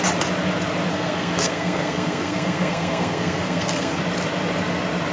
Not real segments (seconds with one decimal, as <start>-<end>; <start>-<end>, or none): 0.9-4.0